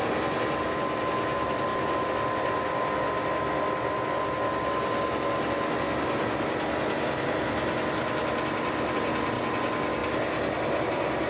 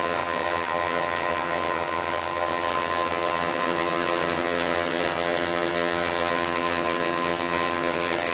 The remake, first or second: second